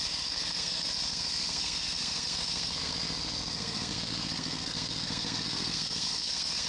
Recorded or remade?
remade